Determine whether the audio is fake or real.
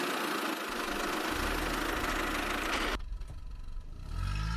real